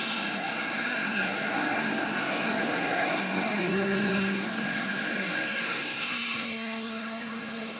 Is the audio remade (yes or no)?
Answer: yes